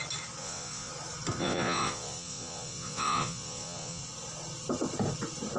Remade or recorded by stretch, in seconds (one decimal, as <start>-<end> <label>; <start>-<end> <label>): 0.0-0.4 recorded; 0.4-0.9 remade; 0.9-1.4 recorded; 1.4-4.0 remade; 4.0-5.6 recorded

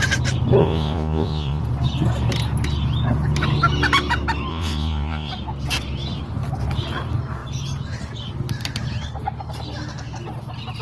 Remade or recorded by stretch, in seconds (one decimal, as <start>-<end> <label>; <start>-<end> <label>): 0.0-0.6 recorded; 0.6-1.6 remade; 1.6-4.5 recorded; 4.5-5.3 remade; 5.3-10.8 recorded

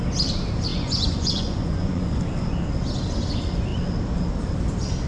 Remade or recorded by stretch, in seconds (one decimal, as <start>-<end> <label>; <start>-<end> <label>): 0.0-0.7 recorded; 0.7-2.2 remade; 2.2-5.1 recorded

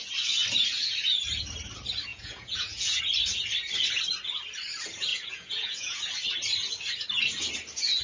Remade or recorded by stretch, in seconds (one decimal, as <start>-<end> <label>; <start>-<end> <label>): 0.0-2.1 recorded; 2.1-3.0 remade; 3.0-5.1 recorded; 5.1-6.0 remade; 6.0-8.0 recorded

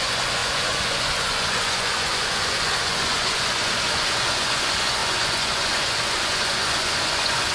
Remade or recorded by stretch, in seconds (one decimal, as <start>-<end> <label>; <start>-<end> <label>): 0.0-7.5 remade